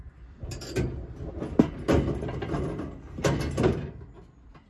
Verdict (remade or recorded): recorded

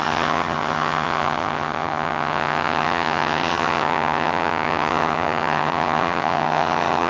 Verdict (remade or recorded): remade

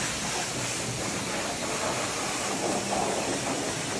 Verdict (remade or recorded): recorded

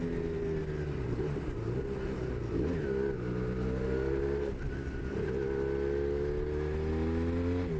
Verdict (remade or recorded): recorded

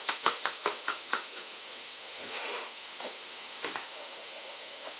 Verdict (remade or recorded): remade